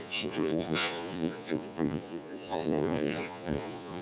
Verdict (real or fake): fake